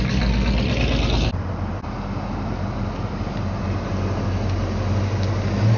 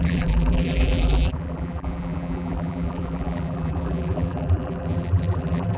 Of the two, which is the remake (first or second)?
second